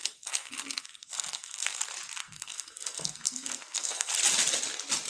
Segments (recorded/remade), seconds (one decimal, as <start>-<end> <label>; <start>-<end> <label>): 0.0-1.8 remade; 1.8-2.2 recorded; 2.2-4.1 remade; 4.1-5.1 recorded